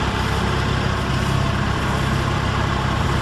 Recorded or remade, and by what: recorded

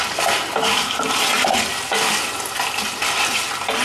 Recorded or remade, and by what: recorded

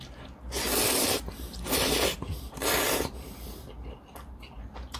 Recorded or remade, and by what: recorded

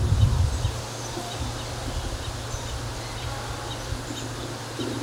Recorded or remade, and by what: recorded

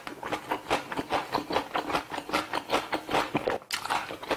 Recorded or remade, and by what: recorded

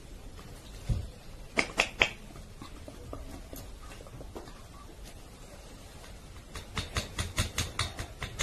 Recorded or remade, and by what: recorded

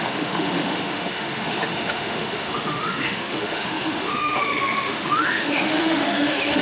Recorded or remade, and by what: remade, autoencoder, DAC-VAE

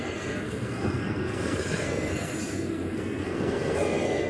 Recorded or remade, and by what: remade, codec, SNAC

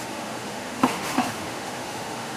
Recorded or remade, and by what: remade, autoencoder, DAC-VAE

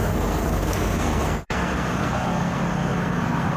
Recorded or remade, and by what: remade, codec, SNAC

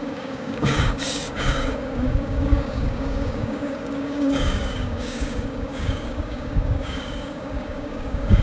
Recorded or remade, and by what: remade, codec, DAC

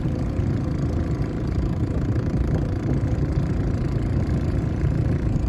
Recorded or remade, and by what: remade, vocoder, BigVGAN v2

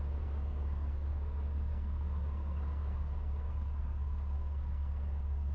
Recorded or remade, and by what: remade, codec, SNAC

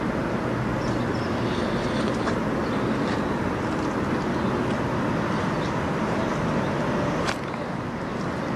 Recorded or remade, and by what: recorded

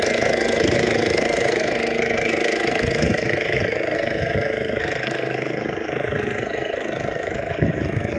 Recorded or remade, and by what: remade, codec, SNAC